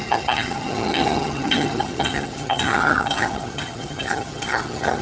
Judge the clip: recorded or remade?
remade